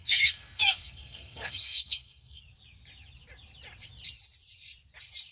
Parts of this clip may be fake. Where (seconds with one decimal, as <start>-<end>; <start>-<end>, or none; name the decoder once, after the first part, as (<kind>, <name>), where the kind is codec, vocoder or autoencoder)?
0.0-2.4 (codec, SNAC)